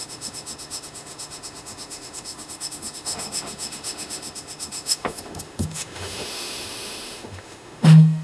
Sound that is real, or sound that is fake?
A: fake